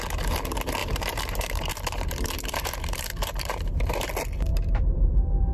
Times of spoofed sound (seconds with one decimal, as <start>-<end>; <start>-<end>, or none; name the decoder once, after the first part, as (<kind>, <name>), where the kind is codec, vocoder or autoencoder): 0.8-4.1 (vocoder, BigVGAN v2); 4.5-5.5